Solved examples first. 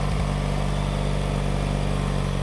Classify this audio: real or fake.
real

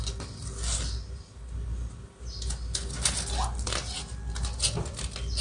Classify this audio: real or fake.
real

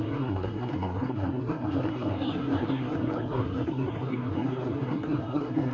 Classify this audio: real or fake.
fake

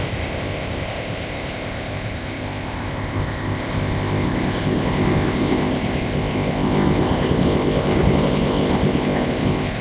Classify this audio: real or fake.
fake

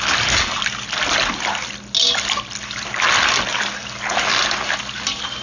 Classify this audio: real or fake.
real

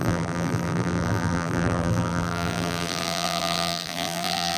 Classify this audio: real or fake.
fake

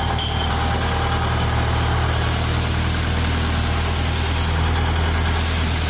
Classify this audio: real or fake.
real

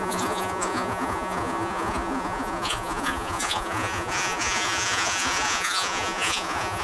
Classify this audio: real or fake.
fake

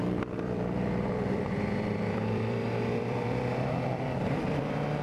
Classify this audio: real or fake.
fake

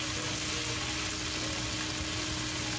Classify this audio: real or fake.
real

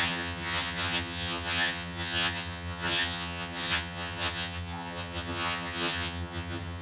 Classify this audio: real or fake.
fake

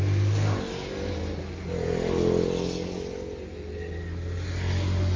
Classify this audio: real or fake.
real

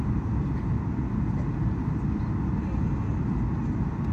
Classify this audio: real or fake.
real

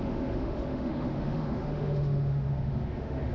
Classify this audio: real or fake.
fake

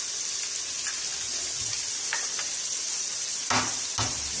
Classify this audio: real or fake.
real